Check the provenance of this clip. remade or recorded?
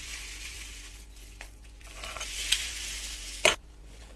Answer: remade